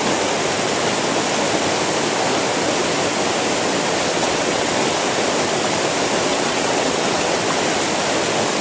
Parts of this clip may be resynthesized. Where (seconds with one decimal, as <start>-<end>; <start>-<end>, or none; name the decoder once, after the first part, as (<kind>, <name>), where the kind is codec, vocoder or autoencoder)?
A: 4.1-4.7 (vocoder, WaveNeXt); 6.3-7.4